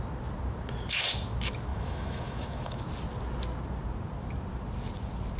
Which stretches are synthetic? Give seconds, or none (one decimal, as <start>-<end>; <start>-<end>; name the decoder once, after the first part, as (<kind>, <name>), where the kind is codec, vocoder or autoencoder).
1.7-2.8 (autoencoder, DAC-VAE)